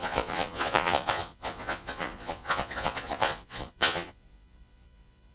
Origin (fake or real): fake